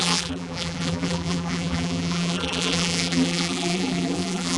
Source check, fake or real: fake